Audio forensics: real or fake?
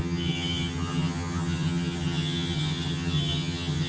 fake